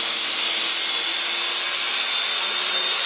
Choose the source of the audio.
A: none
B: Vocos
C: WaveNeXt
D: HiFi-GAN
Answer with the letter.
A